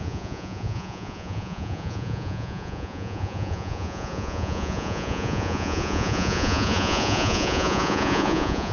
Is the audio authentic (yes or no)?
no